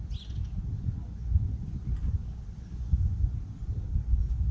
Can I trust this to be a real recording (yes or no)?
yes